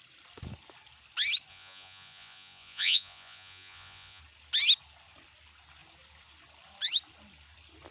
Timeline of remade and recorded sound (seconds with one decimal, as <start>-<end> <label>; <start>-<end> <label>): 0.0-1.5 recorded; 1.5-4.2 remade; 4.2-7.9 recorded